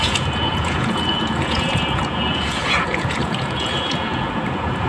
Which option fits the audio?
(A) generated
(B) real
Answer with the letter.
A